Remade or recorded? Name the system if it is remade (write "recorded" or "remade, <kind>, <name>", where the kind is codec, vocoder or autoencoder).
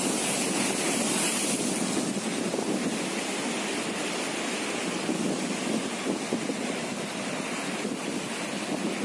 recorded